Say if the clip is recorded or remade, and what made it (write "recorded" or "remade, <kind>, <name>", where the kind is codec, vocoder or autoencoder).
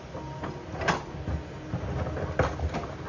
recorded